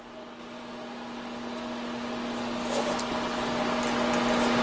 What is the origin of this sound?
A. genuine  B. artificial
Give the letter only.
A